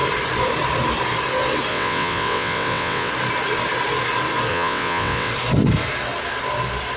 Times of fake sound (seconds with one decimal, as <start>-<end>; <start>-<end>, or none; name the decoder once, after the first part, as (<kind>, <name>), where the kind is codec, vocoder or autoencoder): 1.7-3.1 (vocoder, WaveNeXt); 4.5-5.3